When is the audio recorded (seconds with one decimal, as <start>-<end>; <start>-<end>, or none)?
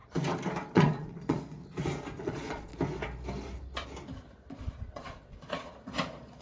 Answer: 0.0-0.7; 1.6-2.2; 2.7-4.4